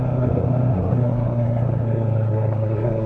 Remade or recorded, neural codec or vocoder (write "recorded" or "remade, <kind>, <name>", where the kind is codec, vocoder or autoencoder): remade, codec, SNAC